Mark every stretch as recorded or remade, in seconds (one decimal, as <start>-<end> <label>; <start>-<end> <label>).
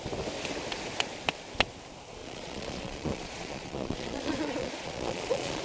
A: 0.0-2.2 recorded; 2.2-5.6 remade